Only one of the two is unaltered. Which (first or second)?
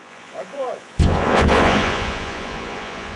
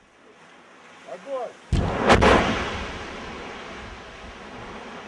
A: second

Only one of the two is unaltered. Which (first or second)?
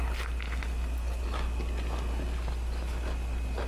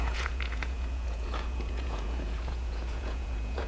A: first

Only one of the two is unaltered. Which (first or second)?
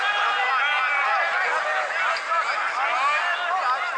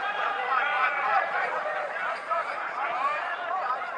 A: first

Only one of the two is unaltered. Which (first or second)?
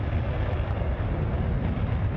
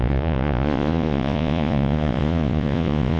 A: first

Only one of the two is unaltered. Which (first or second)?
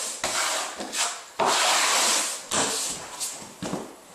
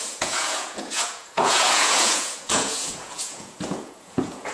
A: first